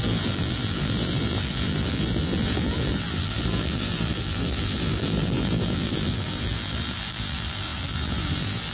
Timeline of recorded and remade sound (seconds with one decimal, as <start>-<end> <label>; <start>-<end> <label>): 0.0-8.7 remade